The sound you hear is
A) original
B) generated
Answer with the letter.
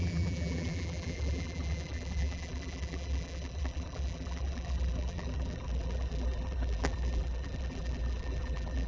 B